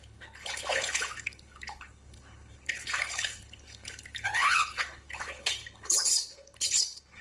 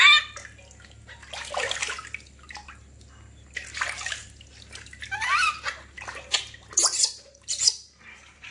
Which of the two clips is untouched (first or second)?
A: second